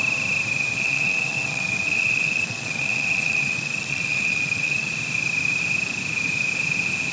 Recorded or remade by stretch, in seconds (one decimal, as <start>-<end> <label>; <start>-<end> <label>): 0.0-0.6 recorded; 0.6-4.9 remade; 4.9-7.1 recorded